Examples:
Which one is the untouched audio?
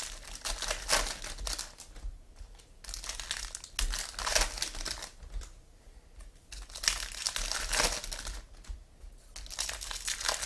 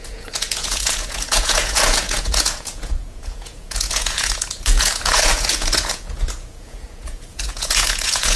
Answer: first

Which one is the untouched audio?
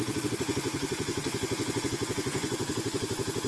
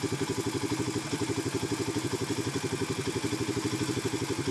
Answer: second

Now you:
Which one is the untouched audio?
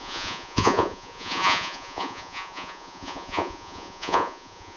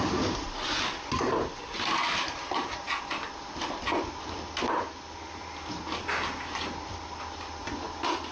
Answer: second